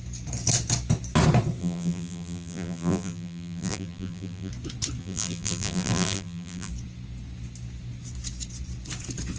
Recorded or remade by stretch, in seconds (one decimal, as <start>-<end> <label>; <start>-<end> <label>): 0.0-1.6 recorded; 1.6-4.5 remade; 4.5-5.0 recorded; 5.0-6.7 remade; 6.7-9.4 recorded